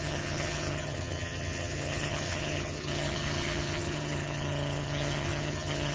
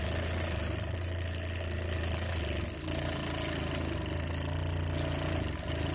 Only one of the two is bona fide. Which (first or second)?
second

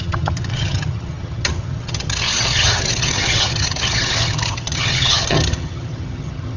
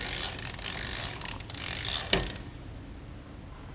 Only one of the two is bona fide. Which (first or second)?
second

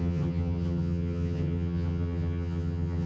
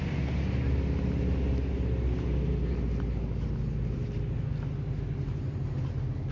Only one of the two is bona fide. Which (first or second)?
second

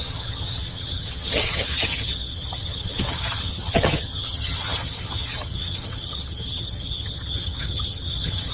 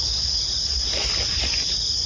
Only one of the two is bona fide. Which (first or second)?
second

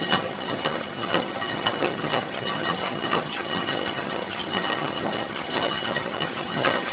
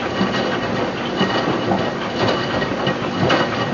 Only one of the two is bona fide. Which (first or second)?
second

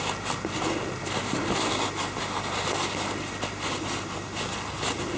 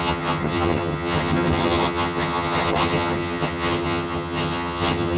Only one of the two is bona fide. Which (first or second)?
first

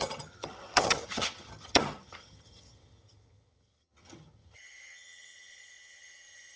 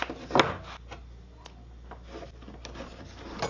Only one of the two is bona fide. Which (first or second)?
second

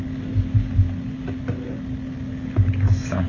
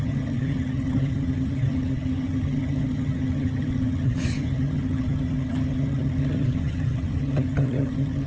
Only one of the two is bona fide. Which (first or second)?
first